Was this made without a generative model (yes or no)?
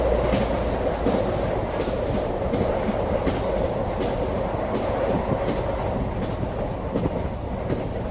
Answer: yes